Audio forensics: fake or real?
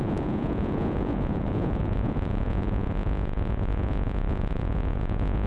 fake